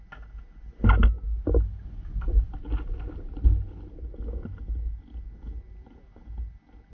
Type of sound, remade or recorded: recorded